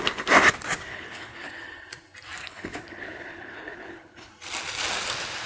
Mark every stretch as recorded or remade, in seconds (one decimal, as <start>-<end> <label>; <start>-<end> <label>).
0.0-0.9 recorded; 0.9-1.5 remade; 1.5-2.4 recorded; 2.4-4.3 remade; 4.3-5.5 recorded